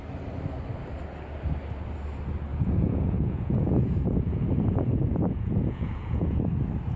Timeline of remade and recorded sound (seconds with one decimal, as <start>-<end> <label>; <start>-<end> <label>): 0.0-2.5 recorded; 2.5-6.4 remade; 6.4-7.0 recorded